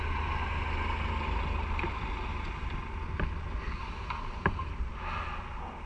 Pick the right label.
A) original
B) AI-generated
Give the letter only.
A